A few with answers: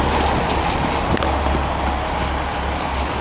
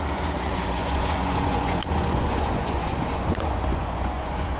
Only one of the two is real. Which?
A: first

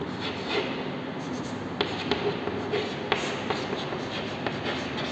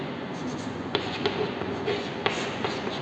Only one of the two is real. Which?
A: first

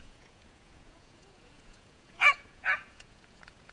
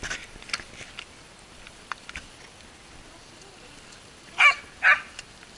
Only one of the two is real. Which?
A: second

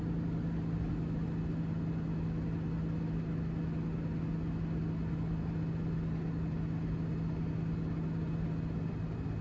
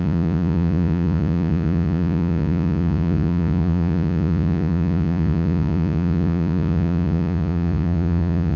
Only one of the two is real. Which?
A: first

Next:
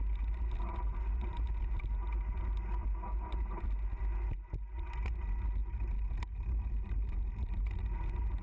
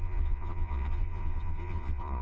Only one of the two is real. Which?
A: first